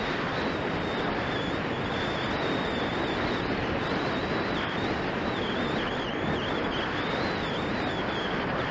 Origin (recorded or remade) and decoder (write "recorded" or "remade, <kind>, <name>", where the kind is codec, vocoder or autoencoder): recorded